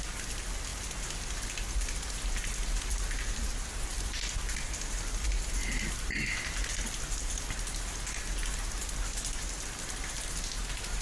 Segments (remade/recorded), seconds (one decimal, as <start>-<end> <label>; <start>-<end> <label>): 0.0-11.0 recorded